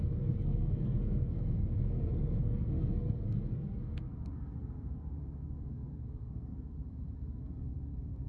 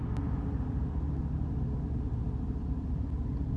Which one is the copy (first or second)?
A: first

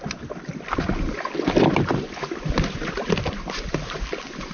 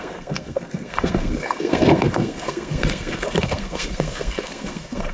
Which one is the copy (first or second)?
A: second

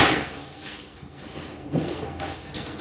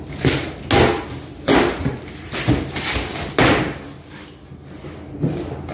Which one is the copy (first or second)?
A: first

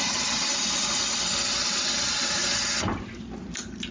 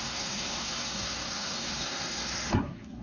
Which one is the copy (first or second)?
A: second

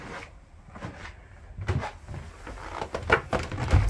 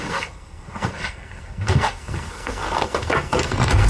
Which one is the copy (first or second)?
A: second